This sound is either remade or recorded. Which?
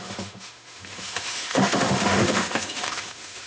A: remade